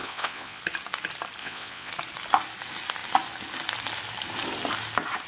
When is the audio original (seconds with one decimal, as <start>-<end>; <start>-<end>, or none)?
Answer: 0.6-1.4; 1.9-5.3